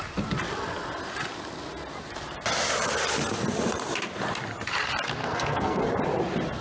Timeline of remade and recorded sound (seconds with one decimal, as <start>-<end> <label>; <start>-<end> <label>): 0.0-5.2 recorded; 5.2-5.8 remade; 5.8-6.6 recorded